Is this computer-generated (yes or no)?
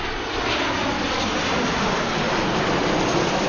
no